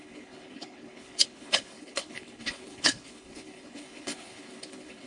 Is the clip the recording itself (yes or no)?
no